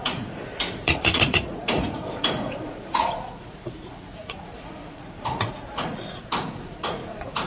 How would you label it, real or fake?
fake